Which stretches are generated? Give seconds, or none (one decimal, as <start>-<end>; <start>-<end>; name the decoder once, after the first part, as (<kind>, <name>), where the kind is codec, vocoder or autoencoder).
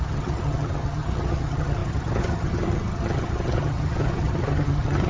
0.0-5.1 (vocoder, HiFi-GAN)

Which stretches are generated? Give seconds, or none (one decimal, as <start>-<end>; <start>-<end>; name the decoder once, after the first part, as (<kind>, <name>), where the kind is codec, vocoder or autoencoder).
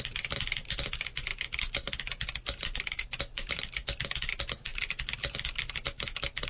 none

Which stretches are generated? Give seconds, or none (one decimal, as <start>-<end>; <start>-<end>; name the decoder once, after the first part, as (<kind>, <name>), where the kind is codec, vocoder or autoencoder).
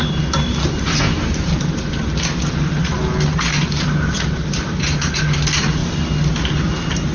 none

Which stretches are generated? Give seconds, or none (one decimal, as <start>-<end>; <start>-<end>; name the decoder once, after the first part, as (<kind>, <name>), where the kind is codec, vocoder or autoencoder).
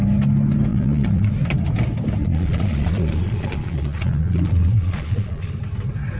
0.7-1.3 (vocoder, Vocos); 2.2-5.5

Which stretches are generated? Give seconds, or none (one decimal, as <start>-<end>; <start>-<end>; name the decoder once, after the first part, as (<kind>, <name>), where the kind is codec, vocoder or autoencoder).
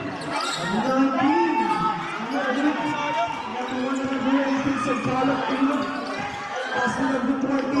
none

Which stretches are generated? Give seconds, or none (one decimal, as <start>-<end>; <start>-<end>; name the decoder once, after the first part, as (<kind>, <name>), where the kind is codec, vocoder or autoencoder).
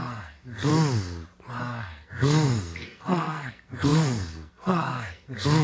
0.0-0.7 (codec, SNAC); 1.6-5.6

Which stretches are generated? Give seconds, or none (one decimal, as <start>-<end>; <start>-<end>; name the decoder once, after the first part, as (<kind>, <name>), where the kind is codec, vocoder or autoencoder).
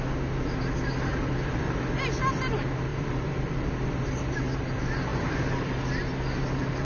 1.1-1.8 (vocoder, BigVGAN v2); 2.9-4.2; 5.1-5.8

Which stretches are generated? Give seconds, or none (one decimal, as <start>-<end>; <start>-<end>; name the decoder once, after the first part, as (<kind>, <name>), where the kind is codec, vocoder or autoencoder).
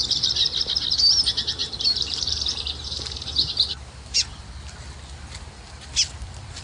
1.6-4.4 (vocoder, BigVGAN v2)